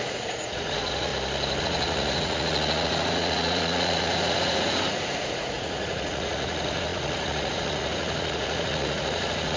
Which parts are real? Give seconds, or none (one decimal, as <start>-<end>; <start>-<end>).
1.1-1.6